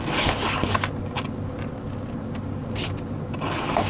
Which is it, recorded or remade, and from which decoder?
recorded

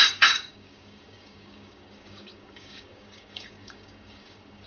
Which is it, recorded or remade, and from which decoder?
remade, codec, DAC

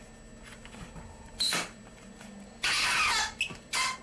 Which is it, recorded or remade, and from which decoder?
recorded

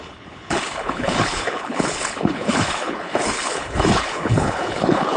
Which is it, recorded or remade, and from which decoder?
remade, codec, HILCodec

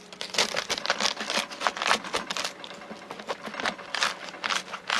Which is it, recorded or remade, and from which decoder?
recorded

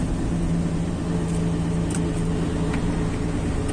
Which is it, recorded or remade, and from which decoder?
recorded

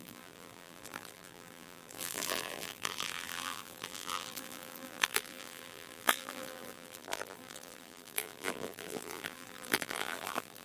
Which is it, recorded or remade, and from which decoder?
remade, vocoder, BigVGAN v2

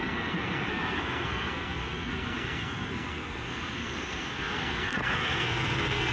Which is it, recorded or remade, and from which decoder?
remade, codec, SNAC